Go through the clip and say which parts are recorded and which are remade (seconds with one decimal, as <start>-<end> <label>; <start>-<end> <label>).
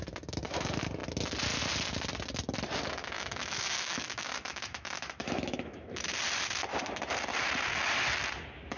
0.0-3.0 recorded; 3.0-6.2 remade; 6.2-8.8 recorded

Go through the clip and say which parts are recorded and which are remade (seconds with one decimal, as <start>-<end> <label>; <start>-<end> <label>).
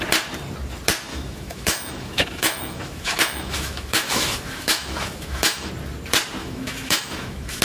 0.0-1.1 recorded; 1.1-5.7 remade; 5.7-6.4 recorded; 6.4-7.6 remade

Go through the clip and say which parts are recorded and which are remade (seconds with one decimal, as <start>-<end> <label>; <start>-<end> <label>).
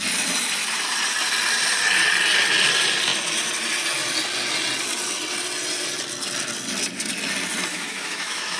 0.0-7.7 recorded; 7.7-8.6 remade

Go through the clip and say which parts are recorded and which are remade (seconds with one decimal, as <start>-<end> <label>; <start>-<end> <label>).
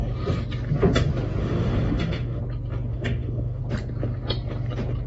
0.0-1.4 recorded; 1.4-2.4 remade; 2.4-2.9 recorded; 2.9-3.6 remade; 3.6-5.1 recorded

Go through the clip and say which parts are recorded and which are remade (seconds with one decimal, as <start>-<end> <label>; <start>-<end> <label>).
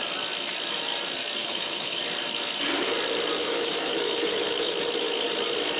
0.0-1.4 recorded; 1.4-2.0 remade; 2.0-3.4 recorded; 3.4-4.8 remade; 4.8-5.8 recorded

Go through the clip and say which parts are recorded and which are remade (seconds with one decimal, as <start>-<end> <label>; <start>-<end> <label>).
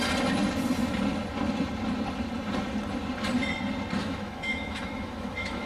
0.0-4.0 recorded; 4.0-5.7 remade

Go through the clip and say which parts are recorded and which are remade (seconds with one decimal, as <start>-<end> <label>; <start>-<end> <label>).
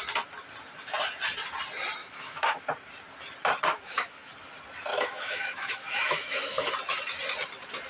0.0-2.0 recorded; 2.0-2.6 remade; 2.6-3.7 recorded; 3.7-4.3 remade; 4.3-4.9 recorded; 4.9-6.7 remade; 6.7-7.9 recorded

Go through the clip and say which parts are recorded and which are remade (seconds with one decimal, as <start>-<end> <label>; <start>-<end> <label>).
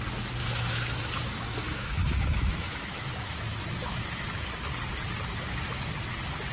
0.0-0.4 recorded; 0.4-4.3 remade; 4.3-6.5 recorded